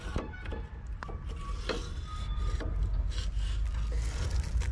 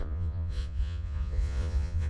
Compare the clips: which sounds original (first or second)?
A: first